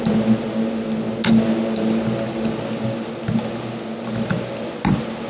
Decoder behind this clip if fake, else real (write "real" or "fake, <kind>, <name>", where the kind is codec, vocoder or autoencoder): real